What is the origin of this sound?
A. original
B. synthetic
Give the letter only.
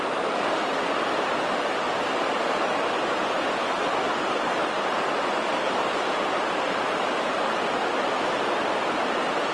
B